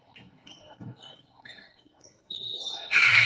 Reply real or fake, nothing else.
fake